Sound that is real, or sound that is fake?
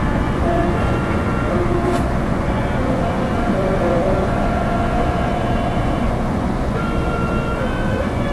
fake